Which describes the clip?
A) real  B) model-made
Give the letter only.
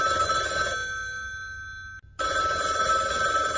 A